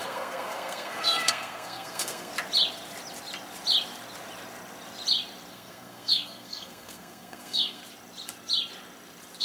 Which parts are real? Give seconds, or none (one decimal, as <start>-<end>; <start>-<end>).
2.3-5.5; 7.8-9.4